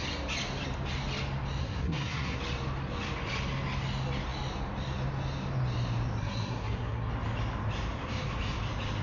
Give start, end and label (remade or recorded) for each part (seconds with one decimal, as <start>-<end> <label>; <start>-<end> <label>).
0.0-1.6 recorded; 1.6-2.4 remade; 2.4-6.2 recorded; 6.2-7.1 remade; 7.1-9.0 recorded